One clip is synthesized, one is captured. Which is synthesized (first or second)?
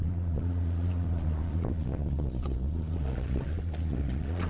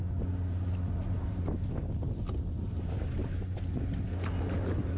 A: first